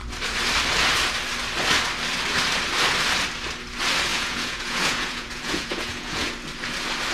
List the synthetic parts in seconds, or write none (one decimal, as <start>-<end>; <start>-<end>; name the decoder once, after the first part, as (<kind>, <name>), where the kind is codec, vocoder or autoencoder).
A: 4.1-6.3 (vocoder, Vocos)

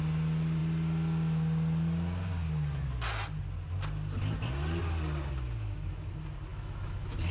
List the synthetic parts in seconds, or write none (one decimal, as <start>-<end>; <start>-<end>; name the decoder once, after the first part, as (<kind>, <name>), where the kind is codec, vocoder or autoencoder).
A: 6.5-7.3 (autoencoder, DAC-VAE)